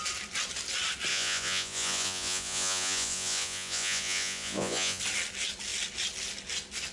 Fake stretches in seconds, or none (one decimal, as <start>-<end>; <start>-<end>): 1.1-5.0